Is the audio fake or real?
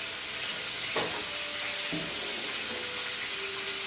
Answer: real